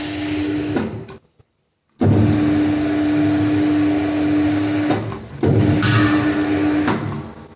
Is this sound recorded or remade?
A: recorded